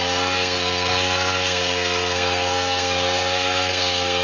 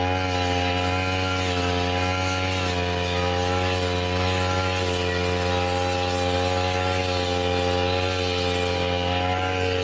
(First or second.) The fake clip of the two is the first